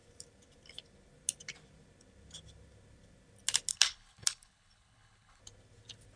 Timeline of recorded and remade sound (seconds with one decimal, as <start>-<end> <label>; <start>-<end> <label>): 0.0-3.7 recorded; 3.7-5.4 remade; 5.4-6.2 recorded